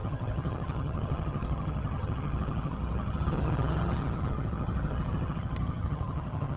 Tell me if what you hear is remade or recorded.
remade